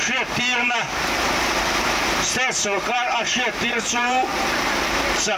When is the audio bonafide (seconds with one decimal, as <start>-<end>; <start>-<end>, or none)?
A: none